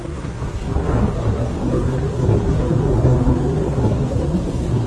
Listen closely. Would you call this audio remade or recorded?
remade